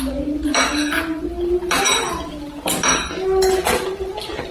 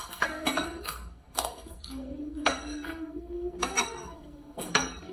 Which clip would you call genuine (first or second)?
first